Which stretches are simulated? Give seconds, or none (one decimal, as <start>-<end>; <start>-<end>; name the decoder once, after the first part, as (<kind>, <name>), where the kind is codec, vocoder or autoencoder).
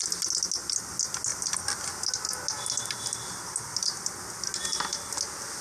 none